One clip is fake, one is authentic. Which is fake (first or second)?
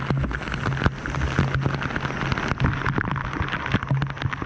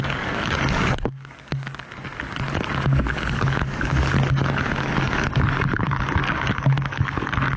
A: second